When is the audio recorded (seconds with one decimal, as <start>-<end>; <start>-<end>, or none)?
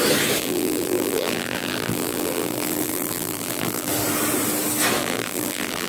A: 0.0-0.4; 3.9-5.0